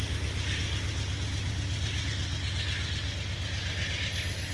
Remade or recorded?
recorded